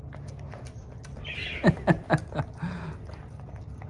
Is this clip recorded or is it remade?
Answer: recorded